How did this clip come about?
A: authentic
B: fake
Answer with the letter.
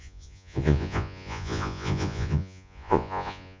B